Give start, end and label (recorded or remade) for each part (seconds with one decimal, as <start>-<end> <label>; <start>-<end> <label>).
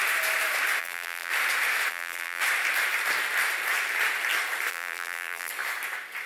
0.0-0.8 recorded; 0.8-1.3 remade; 1.3-1.9 recorded; 1.9-2.4 remade; 2.4-4.7 recorded; 4.7-5.5 remade; 5.5-6.3 recorded